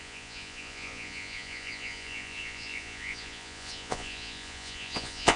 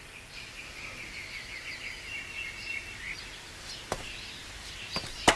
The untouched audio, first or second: second